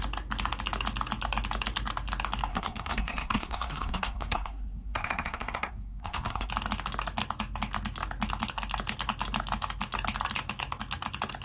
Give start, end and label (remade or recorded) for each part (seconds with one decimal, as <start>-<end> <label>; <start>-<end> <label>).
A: 0.0-2.5 recorded; 2.5-6.5 remade; 6.5-11.4 recorded